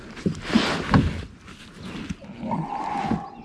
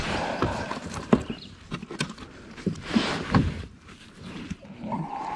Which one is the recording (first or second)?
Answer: first